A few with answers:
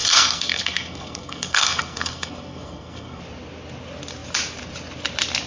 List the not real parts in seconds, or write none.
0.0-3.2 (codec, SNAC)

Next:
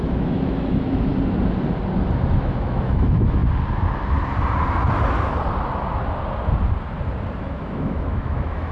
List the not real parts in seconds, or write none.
0.0-1.1 (autoencoder, DAC-VAE); 2.3-3.4; 7.4-8.7

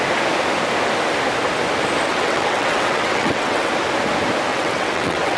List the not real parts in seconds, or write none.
2.1-3.7 (vocoder, WaveNeXt); 4.5-5.4

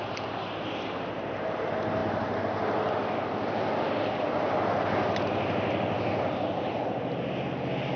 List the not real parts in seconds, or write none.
none

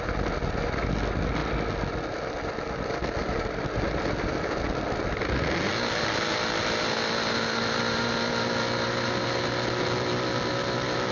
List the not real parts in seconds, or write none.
none

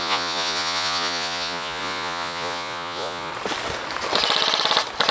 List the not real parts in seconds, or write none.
0.0-3.3 (vocoder, Vocos)